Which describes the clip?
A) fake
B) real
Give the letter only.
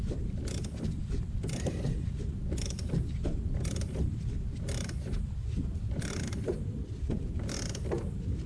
A